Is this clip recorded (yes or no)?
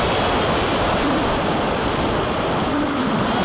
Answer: yes